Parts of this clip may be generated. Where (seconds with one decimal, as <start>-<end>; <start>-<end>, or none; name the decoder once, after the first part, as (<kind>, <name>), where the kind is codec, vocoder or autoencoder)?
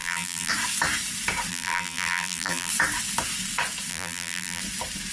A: 0.0-0.5 (vocoder, BigVGAN v2); 1.5-2.7; 3.9-4.6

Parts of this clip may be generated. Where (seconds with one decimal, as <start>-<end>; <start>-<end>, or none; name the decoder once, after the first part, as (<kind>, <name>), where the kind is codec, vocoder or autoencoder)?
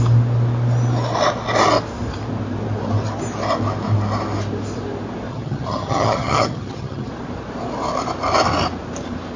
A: 5.3-7.1 (vocoder, HiFi-GAN)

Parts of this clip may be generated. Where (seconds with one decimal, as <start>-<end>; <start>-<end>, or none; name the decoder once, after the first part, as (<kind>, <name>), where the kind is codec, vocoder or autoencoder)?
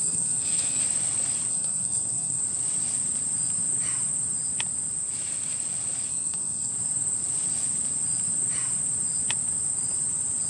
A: 0.0-0.8 (codec, SNAC); 1.5-2.4; 6.1-6.7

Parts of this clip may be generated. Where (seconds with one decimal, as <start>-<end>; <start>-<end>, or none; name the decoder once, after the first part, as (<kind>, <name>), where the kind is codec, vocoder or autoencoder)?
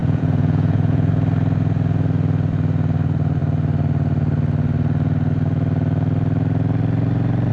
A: 0.0-1.1 (vocoder, Vocos)